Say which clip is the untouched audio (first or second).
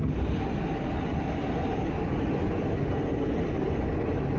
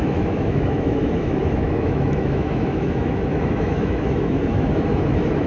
first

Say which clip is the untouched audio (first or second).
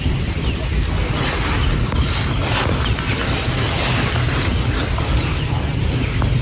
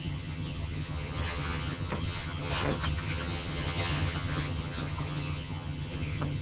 first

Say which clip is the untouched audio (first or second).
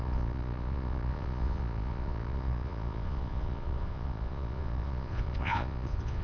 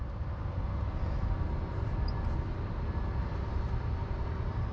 second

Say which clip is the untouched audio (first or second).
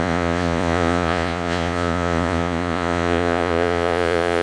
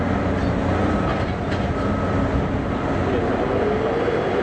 second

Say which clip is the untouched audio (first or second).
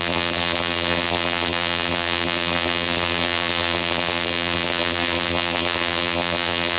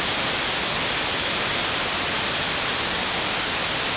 second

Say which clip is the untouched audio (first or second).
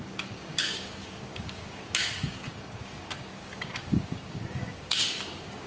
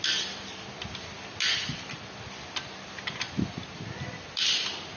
second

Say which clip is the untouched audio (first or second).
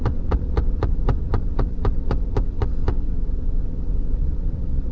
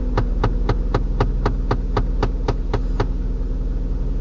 second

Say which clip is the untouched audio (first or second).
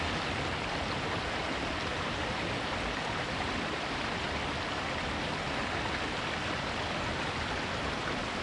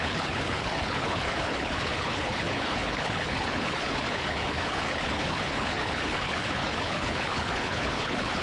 first